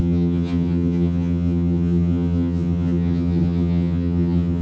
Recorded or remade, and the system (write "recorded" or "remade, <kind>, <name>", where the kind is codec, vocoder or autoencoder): remade, vocoder, HiFi-GAN